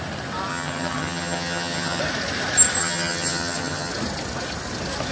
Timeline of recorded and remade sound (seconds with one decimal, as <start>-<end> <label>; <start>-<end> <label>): 0.0-0.5 recorded; 0.5-2.0 remade; 2.0-2.8 recorded; 2.8-3.9 remade; 3.9-5.1 recorded